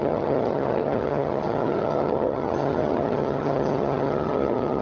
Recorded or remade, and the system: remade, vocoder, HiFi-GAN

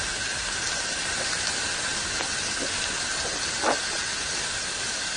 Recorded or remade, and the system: recorded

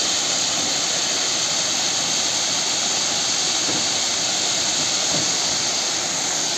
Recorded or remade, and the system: recorded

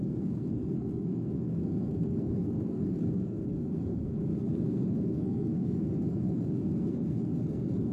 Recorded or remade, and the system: remade, codec, SNAC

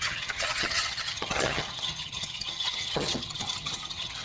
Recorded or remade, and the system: remade, vocoder, HiFi-GAN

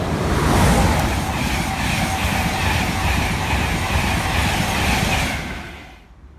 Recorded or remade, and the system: recorded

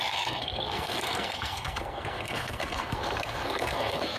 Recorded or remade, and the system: remade, codec, SNAC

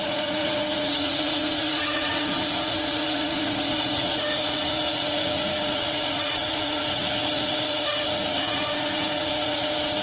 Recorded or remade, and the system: remade, vocoder, Vocos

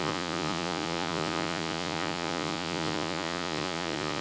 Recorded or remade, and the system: remade, vocoder, Vocos